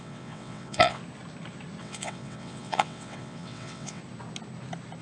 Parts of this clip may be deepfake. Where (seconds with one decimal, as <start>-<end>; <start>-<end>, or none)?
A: 0.0-1.0; 1.8-4.0